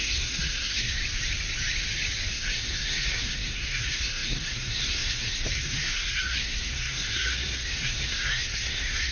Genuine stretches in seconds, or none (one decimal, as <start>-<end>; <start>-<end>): 1.0-2.3